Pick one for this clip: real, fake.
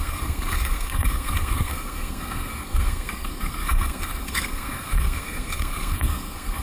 fake